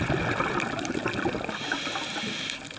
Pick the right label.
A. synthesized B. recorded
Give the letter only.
B